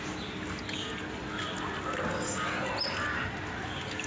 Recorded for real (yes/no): yes